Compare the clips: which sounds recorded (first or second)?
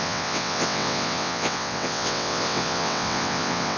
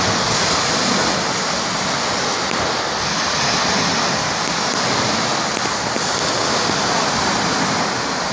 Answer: second